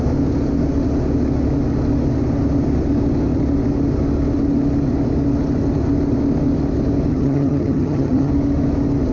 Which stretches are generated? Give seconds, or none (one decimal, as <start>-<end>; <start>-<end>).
7.1-8.3